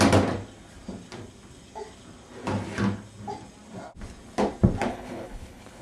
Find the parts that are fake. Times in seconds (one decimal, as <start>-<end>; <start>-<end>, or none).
4.9-5.8